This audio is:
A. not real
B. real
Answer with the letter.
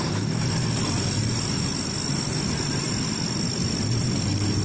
B